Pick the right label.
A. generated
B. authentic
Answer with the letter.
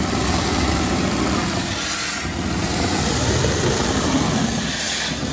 B